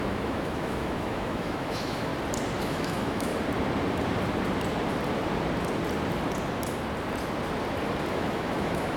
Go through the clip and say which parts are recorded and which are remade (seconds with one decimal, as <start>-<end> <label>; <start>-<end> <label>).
0.0-2.1 remade; 2.1-2.6 recorded; 2.6-3.3 remade; 3.3-8.1 recorded; 8.1-9.0 remade